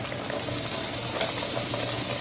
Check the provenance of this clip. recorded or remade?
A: recorded